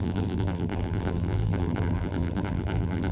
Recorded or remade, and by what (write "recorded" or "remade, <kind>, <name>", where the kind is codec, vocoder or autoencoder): remade, vocoder, BigVGAN v2